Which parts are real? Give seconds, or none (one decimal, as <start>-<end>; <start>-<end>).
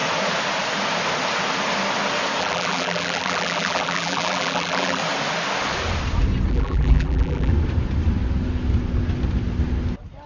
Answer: 0.0-2.4; 5.0-6.5; 7.5-10.3